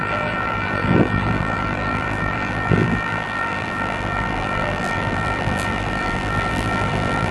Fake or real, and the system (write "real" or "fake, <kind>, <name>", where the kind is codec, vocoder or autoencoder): fake, vocoder, BigVGAN v2